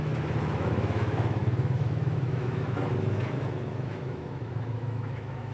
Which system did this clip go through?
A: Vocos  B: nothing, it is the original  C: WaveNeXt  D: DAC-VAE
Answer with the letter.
D